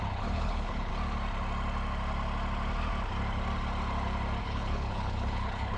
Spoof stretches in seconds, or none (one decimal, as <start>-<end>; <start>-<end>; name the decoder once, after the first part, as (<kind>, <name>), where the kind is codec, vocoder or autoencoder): 0.0-0.9 (codec, HILCodec); 4.4-5.8